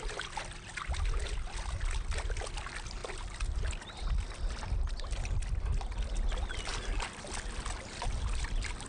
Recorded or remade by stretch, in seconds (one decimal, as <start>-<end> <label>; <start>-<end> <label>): 0.0-8.9 recorded